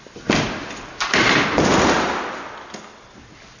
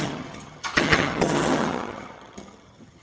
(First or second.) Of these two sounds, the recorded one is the first